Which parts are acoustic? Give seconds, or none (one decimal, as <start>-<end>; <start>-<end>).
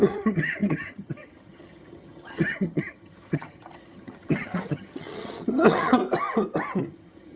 6.0-6.8